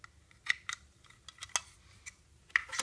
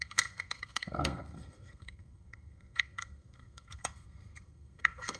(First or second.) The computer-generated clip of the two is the second